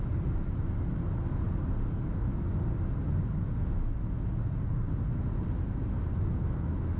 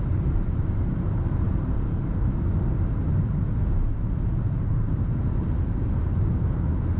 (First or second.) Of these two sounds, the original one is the first